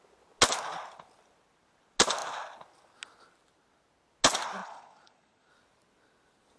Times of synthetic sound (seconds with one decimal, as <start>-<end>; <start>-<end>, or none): 4.6-5.5